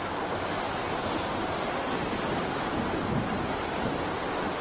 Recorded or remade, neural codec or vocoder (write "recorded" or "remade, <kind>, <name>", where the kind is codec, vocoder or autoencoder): recorded